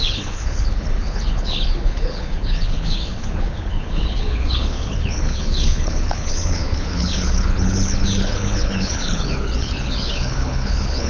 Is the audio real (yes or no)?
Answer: no